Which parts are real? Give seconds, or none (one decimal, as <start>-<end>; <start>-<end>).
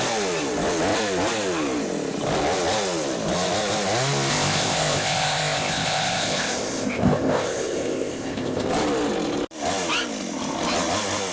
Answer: 0.0-4.3; 8.7-11.3